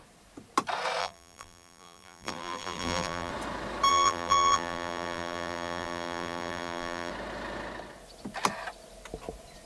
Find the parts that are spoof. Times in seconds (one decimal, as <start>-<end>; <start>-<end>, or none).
1.0-3.3; 3.9-7.1